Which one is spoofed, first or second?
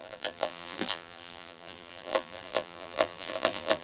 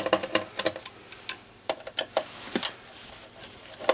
first